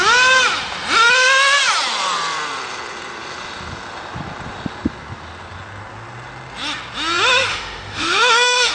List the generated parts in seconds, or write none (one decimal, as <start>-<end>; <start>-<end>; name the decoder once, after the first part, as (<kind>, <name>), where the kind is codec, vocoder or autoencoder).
7.5-8.7 (autoencoder, DAC-VAE)